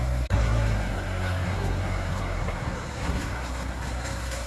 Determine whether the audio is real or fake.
fake